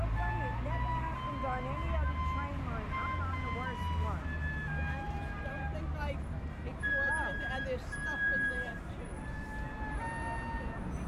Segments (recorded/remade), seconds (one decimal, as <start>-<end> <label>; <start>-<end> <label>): 0.0-5.0 recorded; 5.0-9.2 remade; 9.2-11.1 recorded